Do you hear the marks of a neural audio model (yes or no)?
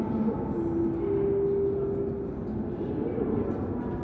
no